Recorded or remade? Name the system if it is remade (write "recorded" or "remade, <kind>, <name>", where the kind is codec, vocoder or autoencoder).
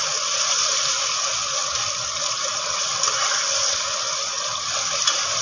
recorded